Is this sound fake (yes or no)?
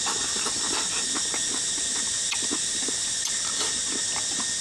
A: no